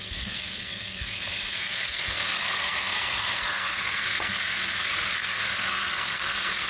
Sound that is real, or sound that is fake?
fake